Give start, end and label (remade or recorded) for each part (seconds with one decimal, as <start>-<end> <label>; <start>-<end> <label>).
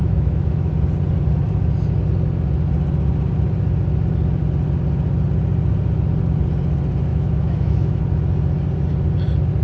0.0-0.7 remade; 0.7-7.1 recorded; 7.1-8.0 remade; 8.0-9.6 recorded